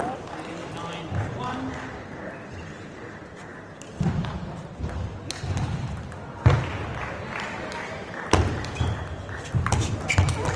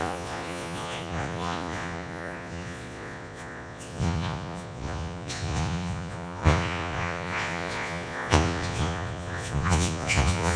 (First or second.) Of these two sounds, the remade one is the second